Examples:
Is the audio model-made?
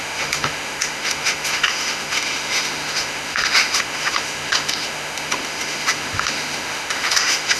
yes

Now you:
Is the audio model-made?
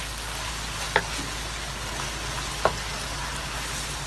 no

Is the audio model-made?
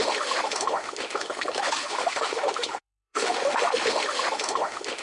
yes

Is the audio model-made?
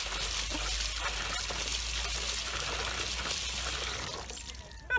no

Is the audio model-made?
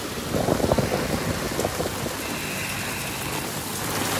no